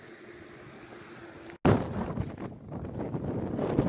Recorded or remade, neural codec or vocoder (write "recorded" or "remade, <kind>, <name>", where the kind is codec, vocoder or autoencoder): recorded